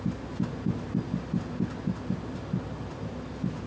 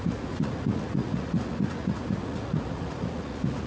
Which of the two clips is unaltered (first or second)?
first